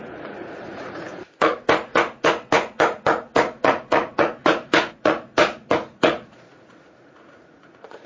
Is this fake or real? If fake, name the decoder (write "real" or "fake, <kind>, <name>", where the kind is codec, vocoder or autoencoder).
fake, vocoder, Vocos